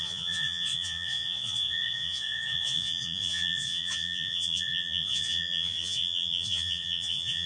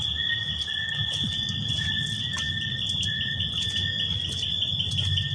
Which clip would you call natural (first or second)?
second